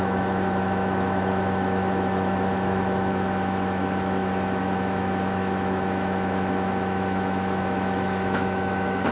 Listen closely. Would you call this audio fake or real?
fake